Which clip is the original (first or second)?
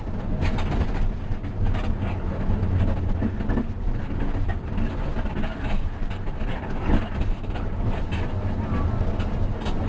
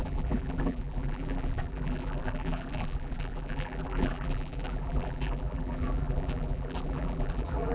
first